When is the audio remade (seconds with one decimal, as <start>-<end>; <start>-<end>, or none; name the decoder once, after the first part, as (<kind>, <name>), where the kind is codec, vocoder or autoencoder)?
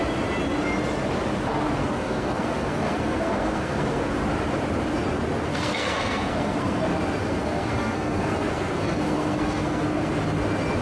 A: 1.8-4.0 (codec, SNAC); 5.5-6.8; 7.2-10.1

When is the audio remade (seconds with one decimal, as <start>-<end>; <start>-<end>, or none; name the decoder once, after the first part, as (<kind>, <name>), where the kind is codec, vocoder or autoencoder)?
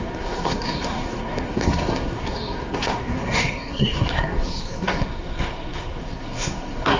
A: 0.0-7.0 (codec, SNAC)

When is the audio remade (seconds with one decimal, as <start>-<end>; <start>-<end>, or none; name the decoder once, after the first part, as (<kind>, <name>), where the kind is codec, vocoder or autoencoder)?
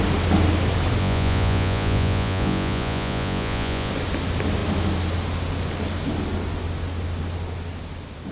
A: 1.0-3.9 (vocoder, Vocos)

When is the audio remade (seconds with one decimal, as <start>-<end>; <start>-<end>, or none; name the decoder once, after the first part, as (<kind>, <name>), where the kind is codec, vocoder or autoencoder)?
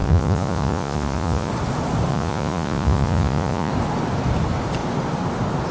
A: 0.0-1.5 (vocoder, Vocos); 2.1-3.7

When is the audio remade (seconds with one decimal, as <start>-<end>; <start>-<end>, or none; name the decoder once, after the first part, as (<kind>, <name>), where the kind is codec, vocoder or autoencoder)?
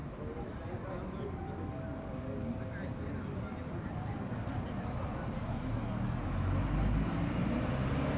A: none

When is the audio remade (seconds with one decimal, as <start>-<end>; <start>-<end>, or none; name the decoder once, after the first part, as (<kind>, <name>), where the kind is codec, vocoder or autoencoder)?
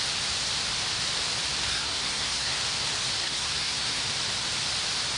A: 1.7-2.6 (codec, SNAC); 3.2-4.0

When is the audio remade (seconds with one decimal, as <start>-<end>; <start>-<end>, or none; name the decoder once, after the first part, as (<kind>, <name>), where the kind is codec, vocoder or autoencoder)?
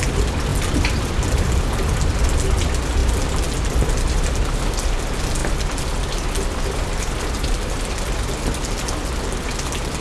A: none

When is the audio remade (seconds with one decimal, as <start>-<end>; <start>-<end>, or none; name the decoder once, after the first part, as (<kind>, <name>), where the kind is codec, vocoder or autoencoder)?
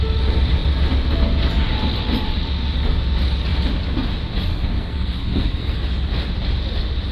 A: 4.5-5.8 (codec, SNAC)